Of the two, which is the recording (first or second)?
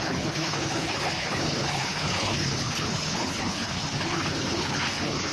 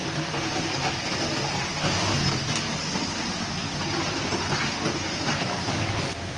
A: second